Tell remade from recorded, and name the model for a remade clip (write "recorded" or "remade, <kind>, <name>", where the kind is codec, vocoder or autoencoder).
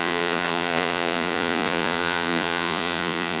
remade, vocoder, Vocos